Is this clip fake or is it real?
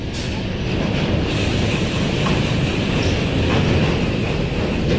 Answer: real